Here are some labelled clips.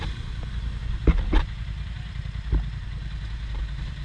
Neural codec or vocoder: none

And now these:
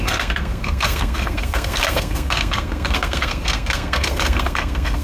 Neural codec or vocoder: codec, SNAC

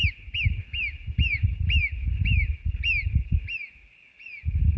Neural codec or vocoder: none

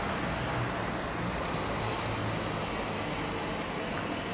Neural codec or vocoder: none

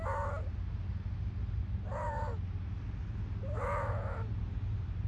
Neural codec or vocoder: none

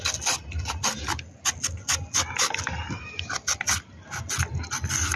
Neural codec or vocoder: none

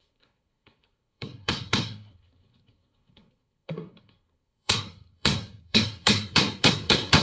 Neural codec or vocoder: codec, SNAC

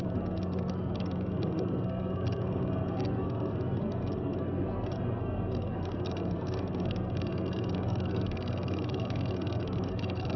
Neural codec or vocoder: codec, SNAC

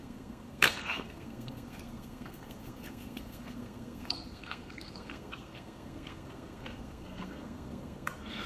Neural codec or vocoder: codec, SNAC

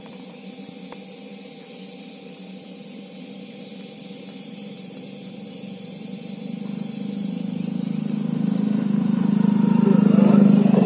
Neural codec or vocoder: none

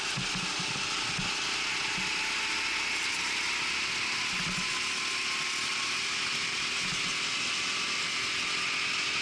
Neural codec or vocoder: none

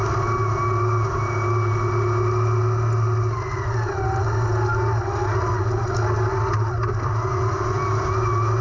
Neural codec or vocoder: none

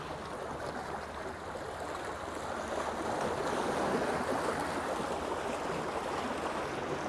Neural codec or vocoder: none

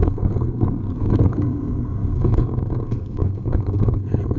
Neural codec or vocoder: codec, SNAC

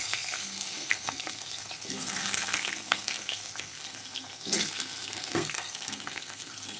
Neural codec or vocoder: codec, SNAC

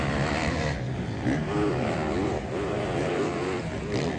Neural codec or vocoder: none